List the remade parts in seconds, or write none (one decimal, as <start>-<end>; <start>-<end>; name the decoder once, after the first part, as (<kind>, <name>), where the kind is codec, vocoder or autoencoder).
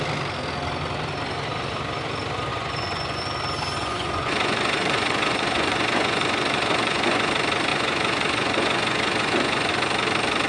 2.5-3.2 (vocoder, Vocos); 3.8-7.3; 7.7-9.7